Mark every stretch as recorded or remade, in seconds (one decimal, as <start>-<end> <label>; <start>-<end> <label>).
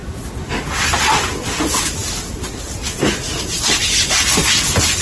0.0-5.0 recorded